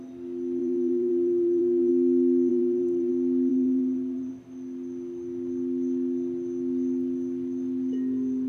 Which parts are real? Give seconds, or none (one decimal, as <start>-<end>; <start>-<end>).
0.0-0.6; 1.9-2.5; 3.1-3.5; 4.3-8.5